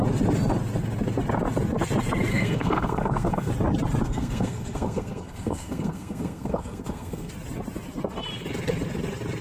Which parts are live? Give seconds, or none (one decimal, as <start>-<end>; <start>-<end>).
0.0-2.3; 3.5-4.0; 7.3-9.4

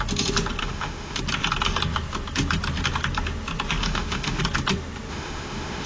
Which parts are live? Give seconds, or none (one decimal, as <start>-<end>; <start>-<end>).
0.0-0.6; 1.2-3.8; 4.4-5.1

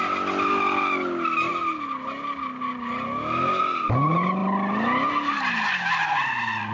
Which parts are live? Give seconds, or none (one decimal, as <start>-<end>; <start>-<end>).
0.0-6.7

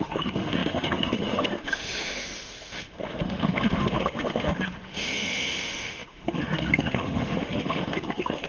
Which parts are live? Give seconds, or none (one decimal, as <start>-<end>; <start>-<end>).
none

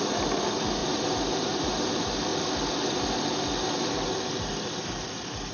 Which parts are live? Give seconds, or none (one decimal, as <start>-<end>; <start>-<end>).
0.0-0.8; 1.9-5.5

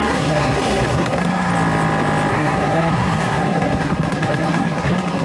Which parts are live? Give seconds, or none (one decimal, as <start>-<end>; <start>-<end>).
1.5-2.3

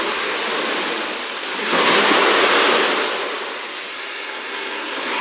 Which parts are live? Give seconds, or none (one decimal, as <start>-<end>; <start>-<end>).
0.0-1.6; 2.4-3.9